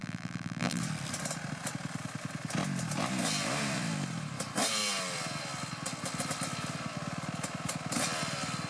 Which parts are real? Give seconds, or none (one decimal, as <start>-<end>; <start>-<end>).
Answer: 0.8-8.7